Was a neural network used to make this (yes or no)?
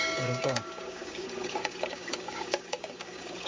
yes